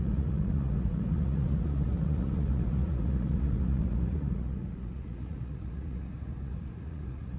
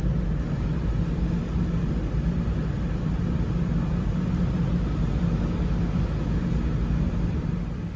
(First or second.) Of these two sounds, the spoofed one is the first